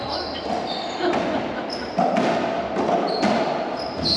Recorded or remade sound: recorded